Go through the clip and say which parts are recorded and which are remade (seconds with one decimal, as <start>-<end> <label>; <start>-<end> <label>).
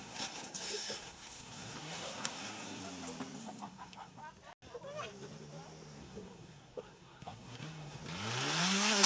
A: 0.0-2.8 remade; 2.8-3.4 recorded; 3.4-4.2 remade; 4.2-6.0 recorded; 6.0-8.0 remade; 8.0-8.6 recorded; 8.6-9.1 remade